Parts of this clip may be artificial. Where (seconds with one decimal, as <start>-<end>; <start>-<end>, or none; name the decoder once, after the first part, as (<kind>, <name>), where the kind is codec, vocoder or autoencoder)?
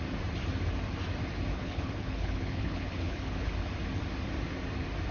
1.5-3.5 (codec, HILCodec)